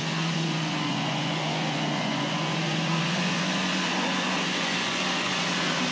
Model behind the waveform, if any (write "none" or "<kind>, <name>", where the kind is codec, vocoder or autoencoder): vocoder, Vocos